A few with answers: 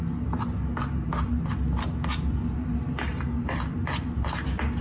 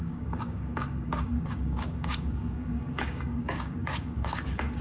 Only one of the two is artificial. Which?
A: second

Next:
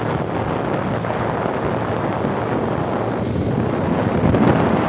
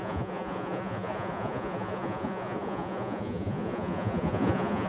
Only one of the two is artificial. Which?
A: second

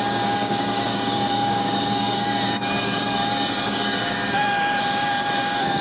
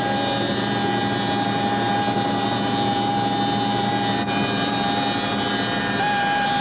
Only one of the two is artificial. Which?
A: first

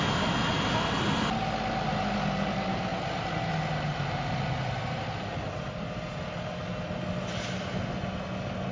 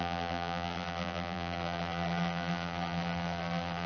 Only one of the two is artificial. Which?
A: second